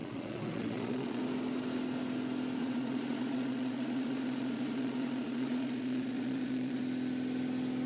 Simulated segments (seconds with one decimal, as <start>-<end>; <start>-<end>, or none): 0.0-1.2; 2.6-6.8